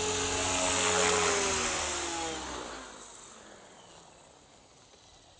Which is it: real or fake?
real